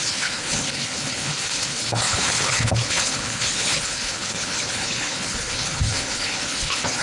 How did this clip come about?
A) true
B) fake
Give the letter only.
B